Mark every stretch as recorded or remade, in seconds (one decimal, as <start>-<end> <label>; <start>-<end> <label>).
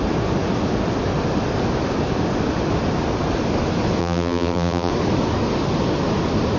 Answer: 0.0-4.0 recorded; 4.0-4.9 remade; 4.9-6.6 recorded